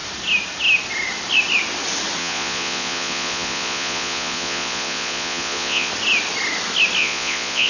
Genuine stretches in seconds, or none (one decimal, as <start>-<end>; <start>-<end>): 0.0-2.2; 5.9-7.0